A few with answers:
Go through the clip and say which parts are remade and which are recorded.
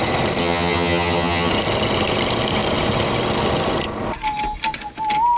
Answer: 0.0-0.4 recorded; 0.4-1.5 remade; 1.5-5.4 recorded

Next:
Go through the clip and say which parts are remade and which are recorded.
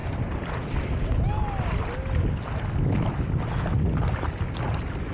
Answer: 0.0-5.1 recorded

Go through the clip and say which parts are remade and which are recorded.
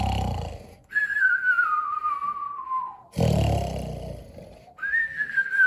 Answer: 0.0-0.7 recorded; 0.7-1.3 remade; 1.3-5.0 recorded; 5.0-5.7 remade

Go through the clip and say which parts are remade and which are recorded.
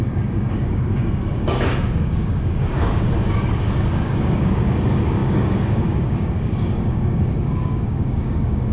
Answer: 0.0-8.7 remade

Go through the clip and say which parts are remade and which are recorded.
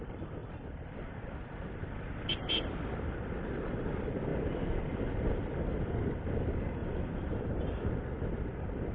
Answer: 0.0-6.8 recorded; 6.8-7.9 remade; 7.9-8.9 recorded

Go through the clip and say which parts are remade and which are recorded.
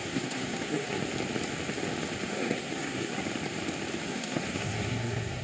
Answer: 0.0-1.0 remade; 1.0-2.3 recorded; 2.3-3.2 remade; 3.2-4.1 recorded; 4.1-5.4 remade